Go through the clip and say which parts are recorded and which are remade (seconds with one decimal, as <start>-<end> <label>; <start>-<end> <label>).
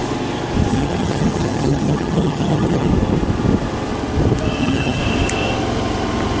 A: 0.0-0.7 recorded; 0.7-2.9 remade; 2.9-4.6 recorded; 4.6-5.0 remade; 5.0-6.4 recorded